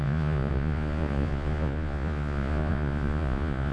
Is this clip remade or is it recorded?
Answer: remade